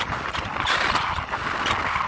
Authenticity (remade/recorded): recorded